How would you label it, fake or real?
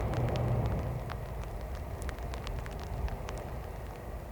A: real